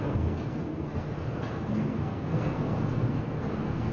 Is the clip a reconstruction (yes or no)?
yes